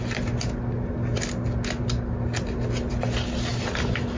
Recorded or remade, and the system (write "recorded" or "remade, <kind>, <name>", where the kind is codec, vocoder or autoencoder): recorded